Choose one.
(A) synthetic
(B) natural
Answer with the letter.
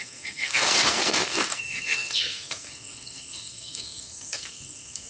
A